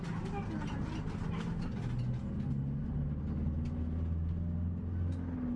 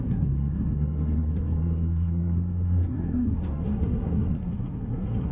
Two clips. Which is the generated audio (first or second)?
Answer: second